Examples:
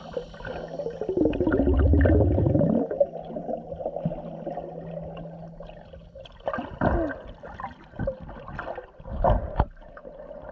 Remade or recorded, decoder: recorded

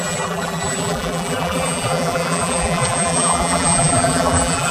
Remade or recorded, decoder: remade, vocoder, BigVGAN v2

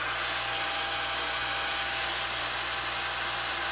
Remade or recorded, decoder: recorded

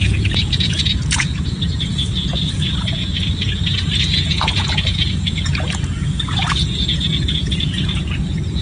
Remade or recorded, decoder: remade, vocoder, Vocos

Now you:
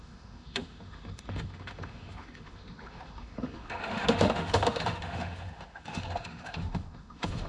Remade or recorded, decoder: remade, autoencoder, DAC-VAE